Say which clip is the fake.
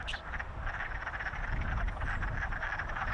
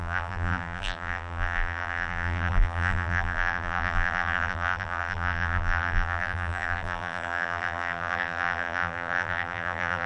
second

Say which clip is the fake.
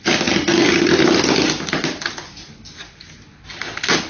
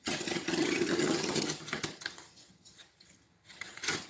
second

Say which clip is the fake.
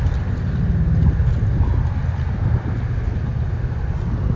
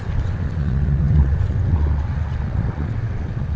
second